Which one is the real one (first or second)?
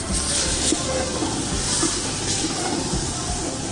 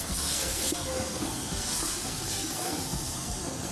first